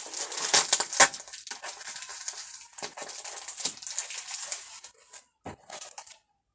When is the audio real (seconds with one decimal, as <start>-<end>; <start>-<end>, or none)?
0.0-6.5